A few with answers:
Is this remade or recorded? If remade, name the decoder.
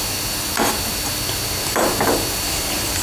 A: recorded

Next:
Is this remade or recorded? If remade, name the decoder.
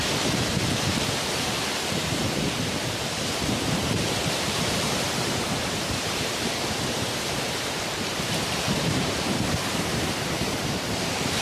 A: remade, vocoder, BigVGAN v2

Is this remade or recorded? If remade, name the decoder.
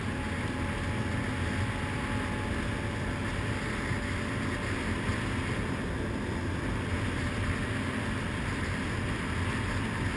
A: recorded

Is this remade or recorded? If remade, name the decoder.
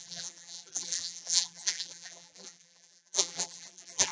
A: remade, vocoder, BigVGAN v2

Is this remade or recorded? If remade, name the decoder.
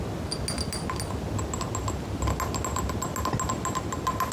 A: recorded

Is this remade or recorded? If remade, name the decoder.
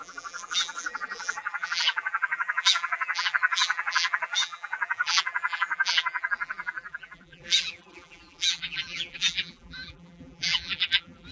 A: remade, vocoder, BigVGAN v2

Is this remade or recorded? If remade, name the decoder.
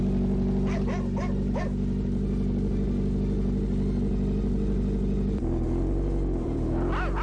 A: recorded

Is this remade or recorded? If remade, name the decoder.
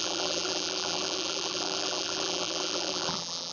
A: remade, vocoder, BigVGAN v2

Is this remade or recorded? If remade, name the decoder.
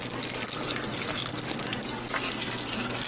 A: recorded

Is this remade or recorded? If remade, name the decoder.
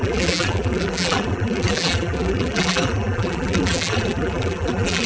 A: remade, vocoder, BigVGAN v2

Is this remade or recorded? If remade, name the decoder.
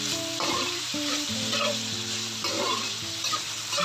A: remade, vocoder, BigVGAN v2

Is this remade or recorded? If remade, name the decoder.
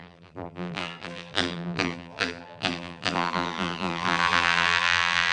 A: remade, vocoder, BigVGAN v2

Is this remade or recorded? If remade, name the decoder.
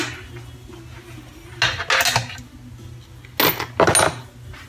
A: recorded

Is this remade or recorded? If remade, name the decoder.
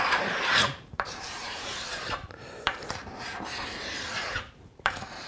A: remade, vocoder, BigVGAN v2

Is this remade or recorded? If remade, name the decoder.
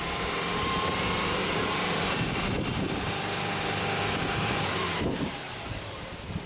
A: remade, vocoder, BigVGAN v2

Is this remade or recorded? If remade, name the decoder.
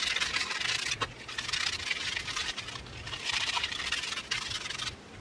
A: remade, vocoder, BigVGAN v2